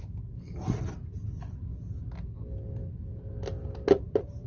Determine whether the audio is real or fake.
real